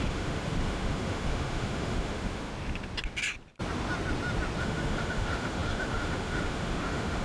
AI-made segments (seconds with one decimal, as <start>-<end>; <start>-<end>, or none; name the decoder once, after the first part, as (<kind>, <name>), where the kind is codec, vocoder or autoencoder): 0.0-2.5 (autoencoder, DAC-VAE); 4.6-7.2